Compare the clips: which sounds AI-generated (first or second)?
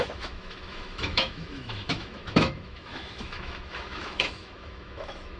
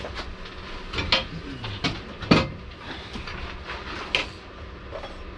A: first